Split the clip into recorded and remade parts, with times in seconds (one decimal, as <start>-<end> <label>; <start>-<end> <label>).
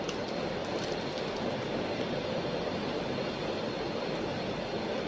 0.0-0.6 recorded; 0.6-3.7 remade; 3.7-5.1 recorded